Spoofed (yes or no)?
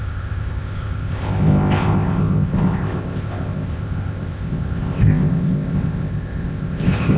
yes